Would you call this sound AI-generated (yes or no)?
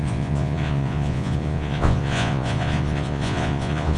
yes